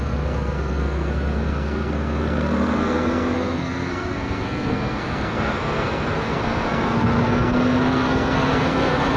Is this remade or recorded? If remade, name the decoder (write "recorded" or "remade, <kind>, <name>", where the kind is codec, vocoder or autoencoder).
remade, codec, SNAC